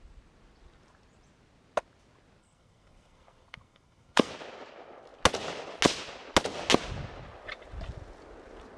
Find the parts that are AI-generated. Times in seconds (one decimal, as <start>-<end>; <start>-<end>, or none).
2.4-4.3